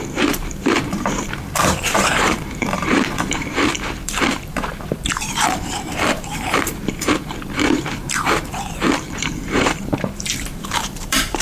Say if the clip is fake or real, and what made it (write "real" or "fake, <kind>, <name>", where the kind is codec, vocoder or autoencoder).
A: fake, vocoder, BigVGAN v2